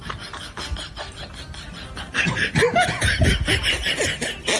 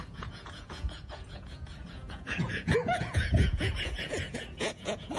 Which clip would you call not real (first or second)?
second